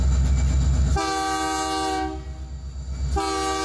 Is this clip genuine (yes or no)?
yes